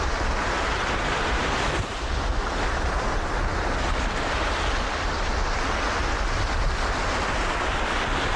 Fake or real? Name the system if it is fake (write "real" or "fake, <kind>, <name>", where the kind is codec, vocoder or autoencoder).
real